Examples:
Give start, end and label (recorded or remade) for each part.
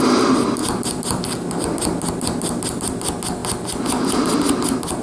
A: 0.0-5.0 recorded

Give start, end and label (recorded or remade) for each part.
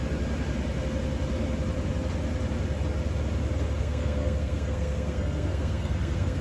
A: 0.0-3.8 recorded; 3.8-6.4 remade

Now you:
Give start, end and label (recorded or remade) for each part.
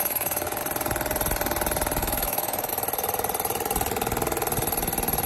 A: 0.0-0.6 remade; 0.6-2.0 recorded; 2.0-2.7 remade; 2.7-5.3 recorded